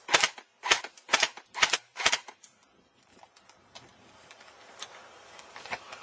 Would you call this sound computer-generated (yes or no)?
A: yes